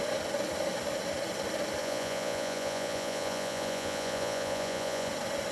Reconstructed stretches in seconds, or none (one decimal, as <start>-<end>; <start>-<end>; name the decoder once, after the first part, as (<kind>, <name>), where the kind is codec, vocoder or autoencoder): 1.8-5.1 (vocoder, Vocos)